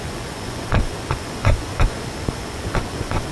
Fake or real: fake